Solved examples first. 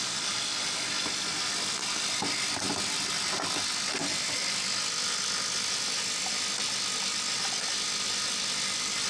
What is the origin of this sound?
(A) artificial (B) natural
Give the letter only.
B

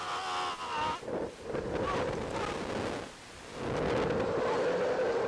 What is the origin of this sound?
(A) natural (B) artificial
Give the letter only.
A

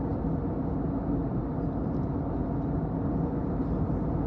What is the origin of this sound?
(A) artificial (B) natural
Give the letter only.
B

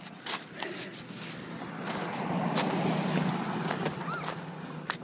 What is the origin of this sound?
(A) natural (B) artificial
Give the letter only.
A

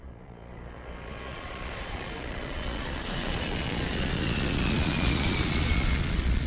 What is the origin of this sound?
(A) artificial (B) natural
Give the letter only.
A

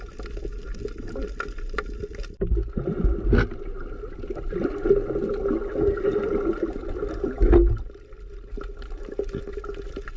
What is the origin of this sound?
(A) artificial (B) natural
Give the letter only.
B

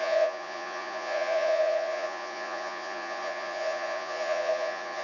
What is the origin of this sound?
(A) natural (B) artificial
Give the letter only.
B